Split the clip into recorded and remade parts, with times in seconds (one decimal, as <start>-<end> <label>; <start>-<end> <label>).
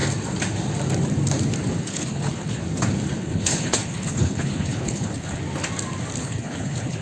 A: 0.0-1.8 recorded; 1.8-2.6 remade; 2.6-3.2 recorded; 3.2-5.4 remade; 5.4-6.2 recorded; 6.2-7.0 remade